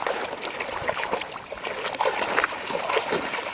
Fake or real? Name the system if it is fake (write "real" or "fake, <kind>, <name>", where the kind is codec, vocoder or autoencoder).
real